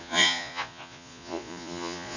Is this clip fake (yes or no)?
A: yes